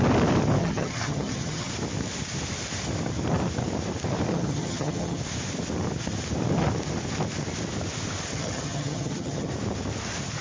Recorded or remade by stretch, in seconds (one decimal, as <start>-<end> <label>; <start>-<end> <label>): 0.0-0.6 recorded; 0.6-1.7 remade; 1.7-4.3 recorded; 4.3-5.2 remade; 5.2-8.3 recorded; 8.3-9.5 remade; 9.5-10.4 recorded

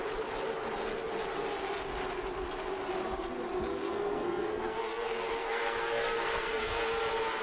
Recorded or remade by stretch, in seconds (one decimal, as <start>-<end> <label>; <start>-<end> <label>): 0.0-3.7 recorded; 3.7-6.8 remade; 6.8-7.4 recorded

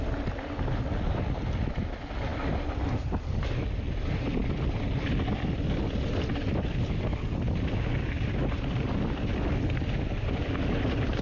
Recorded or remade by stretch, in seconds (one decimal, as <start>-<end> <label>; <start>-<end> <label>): 0.0-11.2 recorded